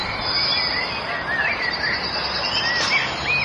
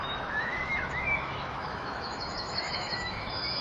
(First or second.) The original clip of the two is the first